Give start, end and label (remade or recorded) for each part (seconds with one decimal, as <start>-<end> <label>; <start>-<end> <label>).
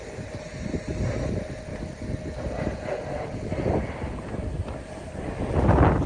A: 0.0-6.1 recorded